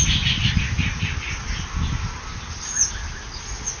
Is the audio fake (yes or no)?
no